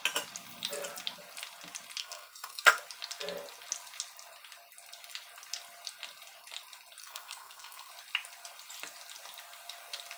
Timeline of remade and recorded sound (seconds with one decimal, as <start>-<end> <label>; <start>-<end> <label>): 0.0-2.0 recorded; 2.0-2.7 remade; 2.7-7.0 recorded; 7.0-7.9 remade; 7.9-10.2 recorded